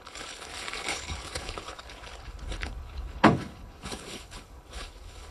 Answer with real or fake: fake